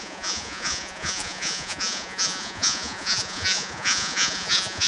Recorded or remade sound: remade